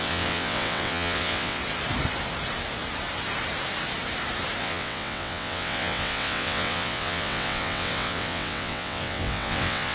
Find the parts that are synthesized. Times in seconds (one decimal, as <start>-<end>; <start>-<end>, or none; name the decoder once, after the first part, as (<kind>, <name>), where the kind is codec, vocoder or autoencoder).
0.0-1.6 (vocoder, WaveNeXt); 4.6-9.9